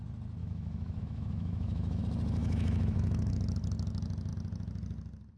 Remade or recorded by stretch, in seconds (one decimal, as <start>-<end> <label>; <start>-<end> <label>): 0.0-0.4 recorded; 0.4-2.0 remade; 2.0-2.4 recorded; 2.4-3.3 remade; 3.3-5.4 recorded

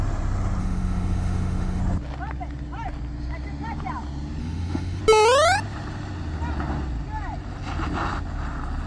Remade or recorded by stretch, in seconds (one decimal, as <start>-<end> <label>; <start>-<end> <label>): 0.0-0.6 recorded; 0.6-1.8 remade; 1.8-4.4 recorded; 4.4-5.0 remade; 5.0-8.9 recorded

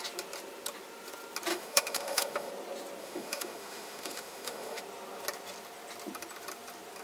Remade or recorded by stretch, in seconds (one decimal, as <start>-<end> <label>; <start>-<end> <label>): 0.0-1.5 recorded; 1.5-2.5 remade; 2.5-3.0 recorded; 3.0-4.8 remade; 4.8-7.0 recorded

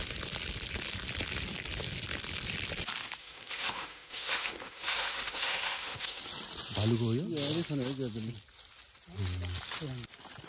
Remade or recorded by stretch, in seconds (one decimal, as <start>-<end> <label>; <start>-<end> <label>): 0.0-3.2 recorded; 3.2-6.2 remade; 6.2-10.5 recorded

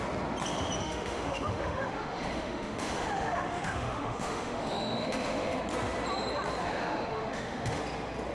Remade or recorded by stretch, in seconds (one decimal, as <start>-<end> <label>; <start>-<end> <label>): 0.0-0.8 recorded; 0.8-5.6 remade; 5.6-6.6 recorded; 6.6-7.8 remade; 7.8-8.3 recorded

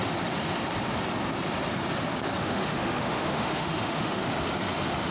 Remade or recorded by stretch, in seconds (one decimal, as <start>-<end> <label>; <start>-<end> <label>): 0.0-2.4 recorded; 2.4-4.2 remade; 4.2-5.1 recorded

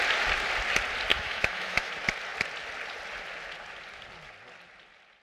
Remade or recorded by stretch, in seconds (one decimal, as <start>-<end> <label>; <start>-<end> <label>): 0.0-1.1 recorded; 1.1-1.9 remade; 1.9-5.2 recorded